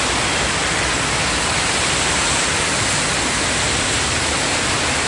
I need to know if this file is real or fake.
real